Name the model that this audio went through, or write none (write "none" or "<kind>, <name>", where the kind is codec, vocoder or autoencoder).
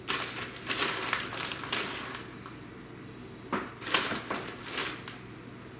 none